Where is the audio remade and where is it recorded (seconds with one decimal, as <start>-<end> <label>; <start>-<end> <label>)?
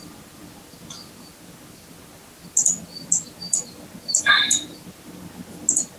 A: 0.0-6.0 recorded